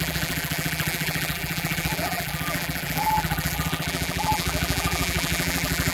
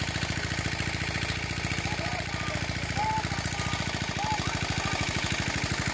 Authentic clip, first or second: second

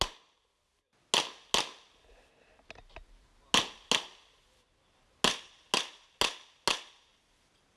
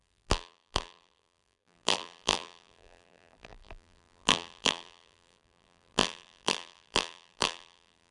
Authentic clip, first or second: first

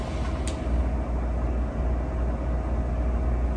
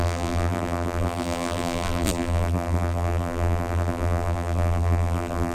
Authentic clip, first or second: first